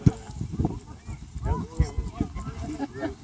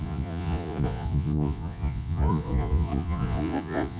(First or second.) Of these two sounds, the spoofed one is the second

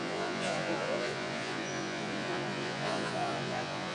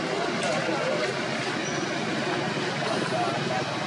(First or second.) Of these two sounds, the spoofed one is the first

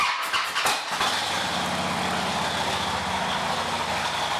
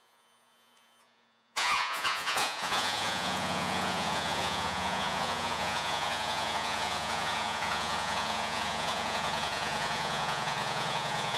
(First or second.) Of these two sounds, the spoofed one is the second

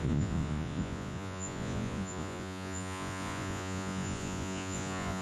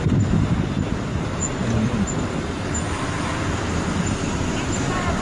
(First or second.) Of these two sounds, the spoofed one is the first